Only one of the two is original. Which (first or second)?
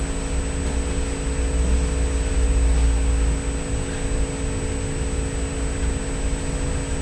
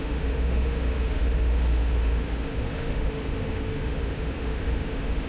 first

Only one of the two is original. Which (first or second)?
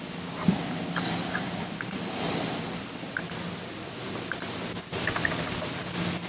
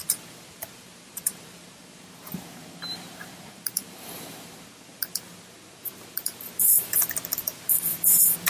first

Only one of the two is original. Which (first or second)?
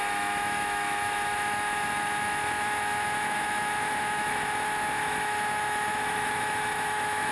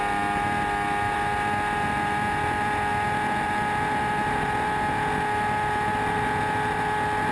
second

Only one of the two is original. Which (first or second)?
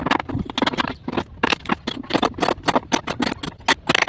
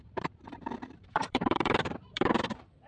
first